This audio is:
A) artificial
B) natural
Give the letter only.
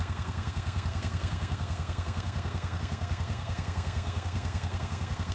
A